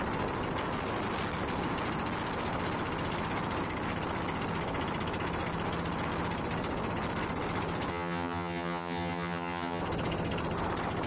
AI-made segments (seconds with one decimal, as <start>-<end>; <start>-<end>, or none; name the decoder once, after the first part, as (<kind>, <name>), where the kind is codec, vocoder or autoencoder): 7.9-9.8 (vocoder, HiFi-GAN)